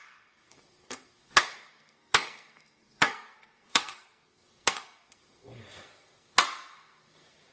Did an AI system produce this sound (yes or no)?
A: yes